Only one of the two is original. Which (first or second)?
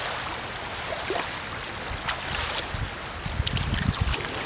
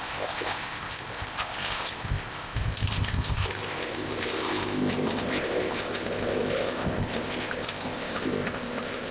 first